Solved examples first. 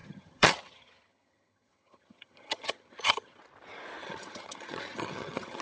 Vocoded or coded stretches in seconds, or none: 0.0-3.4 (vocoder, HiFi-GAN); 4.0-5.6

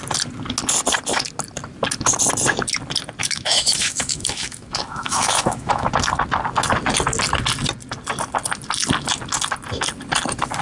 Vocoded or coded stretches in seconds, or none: 3.2-5.9 (autoencoder, DAC-VAE)

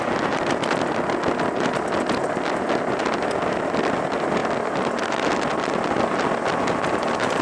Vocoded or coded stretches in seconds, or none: none

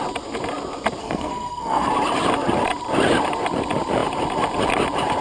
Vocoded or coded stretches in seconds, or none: 1.0-1.9 (codec, SNAC)

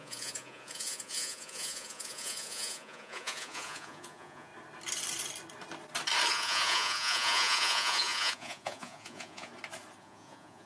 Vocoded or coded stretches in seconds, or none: 0.0-4.5 (vocoder, Vocos); 6.3-9.5; 10.0-10.7

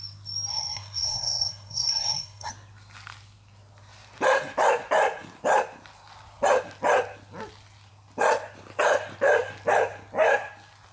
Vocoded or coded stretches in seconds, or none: 0.5-2.5 (codec, SNAC)